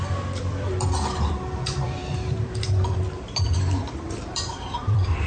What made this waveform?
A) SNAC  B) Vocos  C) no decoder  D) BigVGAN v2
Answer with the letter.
D